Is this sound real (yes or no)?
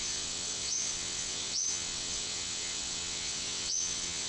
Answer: no